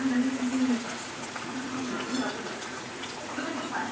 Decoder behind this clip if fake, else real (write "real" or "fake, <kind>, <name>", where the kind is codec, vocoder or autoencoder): fake, vocoder, Vocos